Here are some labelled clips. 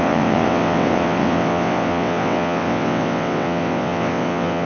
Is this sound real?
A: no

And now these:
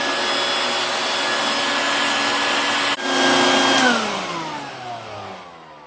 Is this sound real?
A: yes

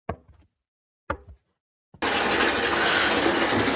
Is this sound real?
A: yes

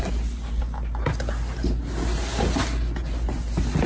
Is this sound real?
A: yes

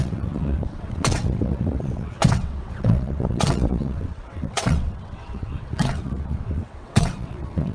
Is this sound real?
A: no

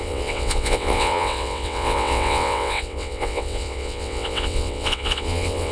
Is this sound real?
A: no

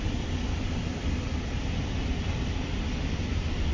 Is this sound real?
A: yes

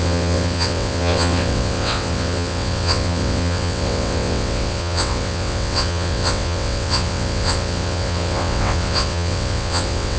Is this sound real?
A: no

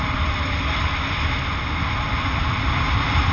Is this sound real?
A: yes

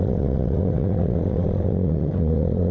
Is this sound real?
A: no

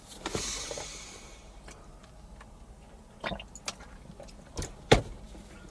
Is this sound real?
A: yes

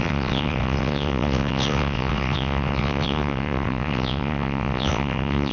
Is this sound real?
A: no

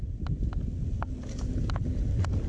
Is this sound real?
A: yes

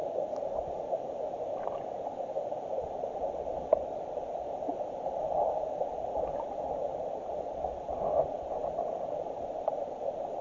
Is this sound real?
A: yes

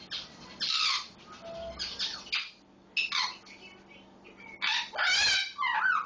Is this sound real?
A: yes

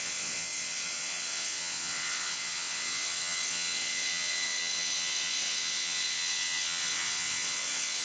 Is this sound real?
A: no